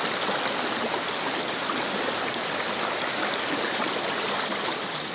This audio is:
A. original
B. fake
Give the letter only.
A